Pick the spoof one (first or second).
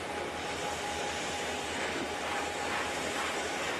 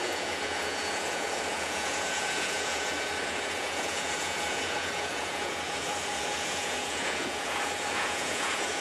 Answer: second